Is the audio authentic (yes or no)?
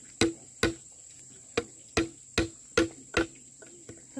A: yes